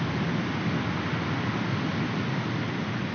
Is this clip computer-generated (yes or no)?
no